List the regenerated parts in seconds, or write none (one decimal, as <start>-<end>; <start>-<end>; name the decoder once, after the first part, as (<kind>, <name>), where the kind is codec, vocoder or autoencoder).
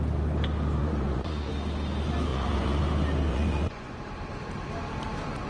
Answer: 0.8-1.5 (vocoder, Vocos); 2.3-2.8; 3.3-4.0